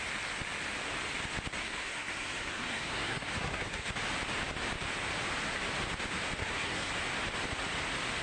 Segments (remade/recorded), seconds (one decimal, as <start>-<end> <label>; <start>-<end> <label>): 0.0-1.6 recorded; 1.6-3.9 remade; 3.9-6.4 recorded; 6.4-6.9 remade; 6.9-8.2 recorded